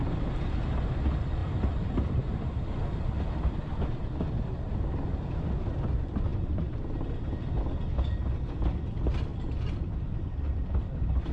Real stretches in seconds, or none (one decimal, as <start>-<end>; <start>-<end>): 0.0-9.3

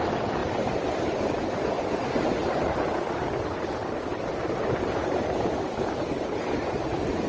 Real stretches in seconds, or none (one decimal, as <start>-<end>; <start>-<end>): 0.0-2.4; 6.8-7.3

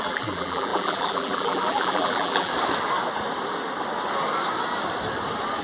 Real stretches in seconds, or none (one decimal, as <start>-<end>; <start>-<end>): 2.5-5.6

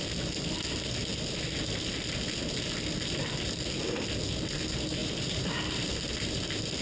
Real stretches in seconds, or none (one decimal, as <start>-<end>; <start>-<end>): 0.0-5.0